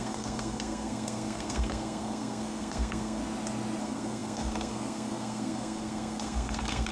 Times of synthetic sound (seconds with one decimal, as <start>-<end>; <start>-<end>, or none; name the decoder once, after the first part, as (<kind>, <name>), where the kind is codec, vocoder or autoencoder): 0.0-3.2 (codec, SNAC); 3.8-6.9